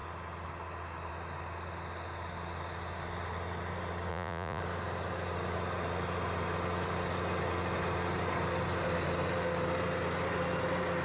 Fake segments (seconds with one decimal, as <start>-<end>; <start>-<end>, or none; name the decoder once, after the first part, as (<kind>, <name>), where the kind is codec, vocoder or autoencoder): 4.1-4.6 (vocoder, Vocos)

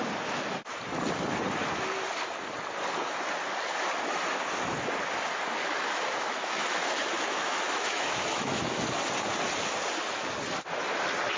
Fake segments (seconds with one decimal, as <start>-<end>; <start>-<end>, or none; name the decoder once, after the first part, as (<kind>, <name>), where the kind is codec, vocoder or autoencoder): 5.6-8.8 (autoencoder, DAC-VAE)

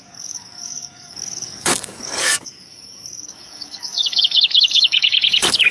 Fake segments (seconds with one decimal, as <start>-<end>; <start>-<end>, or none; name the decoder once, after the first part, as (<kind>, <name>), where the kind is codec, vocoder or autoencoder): 0.0-5.7 (codec, DAC)

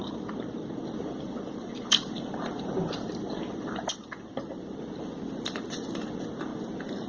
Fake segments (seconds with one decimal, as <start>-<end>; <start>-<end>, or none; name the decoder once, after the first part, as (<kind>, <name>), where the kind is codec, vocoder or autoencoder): 0.0-4.3 (vocoder, BigVGAN v2)

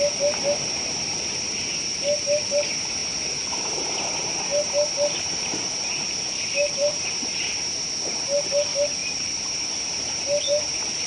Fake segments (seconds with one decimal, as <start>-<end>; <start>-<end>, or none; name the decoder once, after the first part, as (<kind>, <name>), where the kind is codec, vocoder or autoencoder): none

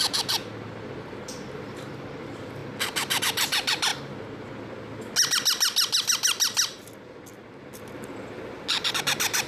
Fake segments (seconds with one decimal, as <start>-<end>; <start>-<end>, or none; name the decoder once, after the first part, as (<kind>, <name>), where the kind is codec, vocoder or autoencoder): 0.0-3.9 (vocoder, BigVGAN v2); 8.9-9.5

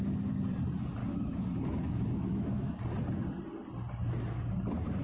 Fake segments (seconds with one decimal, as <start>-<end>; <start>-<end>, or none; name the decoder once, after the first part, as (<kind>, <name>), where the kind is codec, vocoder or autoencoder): 1.0-2.7 (autoencoder, DAC-VAE)

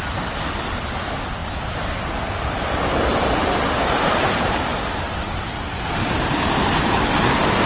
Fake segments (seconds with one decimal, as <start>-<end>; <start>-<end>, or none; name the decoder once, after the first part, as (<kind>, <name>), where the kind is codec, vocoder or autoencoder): 6.0-6.8 (codec, DAC)